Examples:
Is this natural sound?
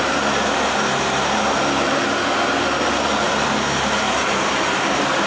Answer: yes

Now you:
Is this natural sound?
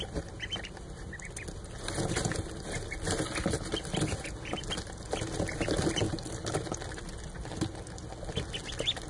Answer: yes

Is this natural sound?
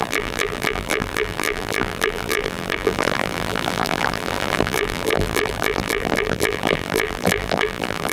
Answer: no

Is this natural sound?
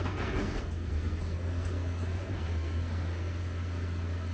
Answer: no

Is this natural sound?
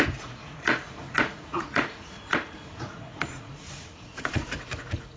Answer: no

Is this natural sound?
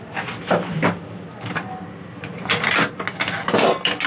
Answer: yes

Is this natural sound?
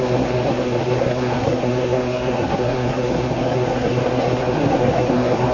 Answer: no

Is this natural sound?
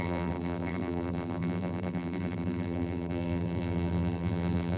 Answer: no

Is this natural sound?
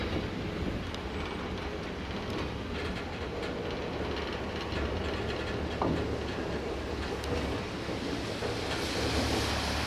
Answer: yes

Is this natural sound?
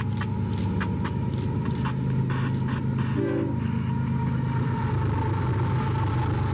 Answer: yes